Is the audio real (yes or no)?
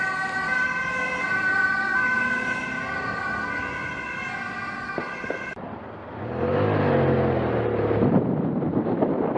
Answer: yes